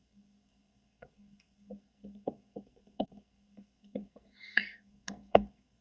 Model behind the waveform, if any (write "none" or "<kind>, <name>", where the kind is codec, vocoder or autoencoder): codec, SNAC